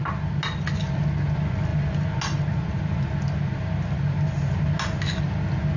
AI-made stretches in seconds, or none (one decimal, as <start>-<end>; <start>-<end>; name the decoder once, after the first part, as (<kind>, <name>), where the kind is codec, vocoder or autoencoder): none